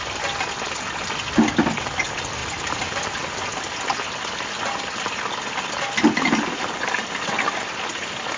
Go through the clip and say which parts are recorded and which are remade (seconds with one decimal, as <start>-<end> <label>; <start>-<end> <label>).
0.0-2.4 recorded; 2.4-3.2 remade; 3.2-8.4 recorded